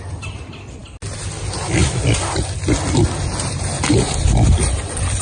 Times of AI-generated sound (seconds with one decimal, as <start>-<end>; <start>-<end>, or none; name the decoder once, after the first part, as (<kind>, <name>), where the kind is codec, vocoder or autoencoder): none